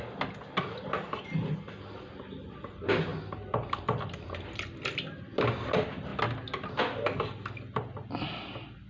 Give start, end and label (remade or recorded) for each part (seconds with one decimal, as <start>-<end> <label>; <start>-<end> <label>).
0.0-8.9 recorded